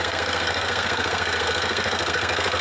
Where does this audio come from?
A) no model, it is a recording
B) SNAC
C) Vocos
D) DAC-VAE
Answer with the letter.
B